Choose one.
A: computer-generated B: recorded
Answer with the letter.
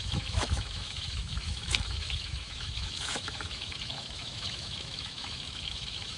A